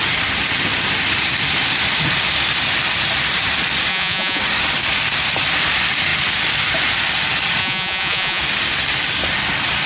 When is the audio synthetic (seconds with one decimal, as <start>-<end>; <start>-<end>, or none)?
3.9-4.4; 7.6-8.4